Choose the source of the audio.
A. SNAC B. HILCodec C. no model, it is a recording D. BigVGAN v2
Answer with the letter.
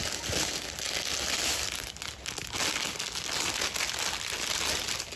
C